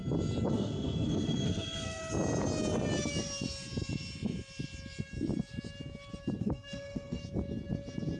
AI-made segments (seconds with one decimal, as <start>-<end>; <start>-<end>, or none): 0.5-2.0; 6.4-7.2